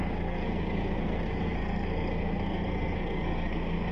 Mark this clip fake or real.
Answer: fake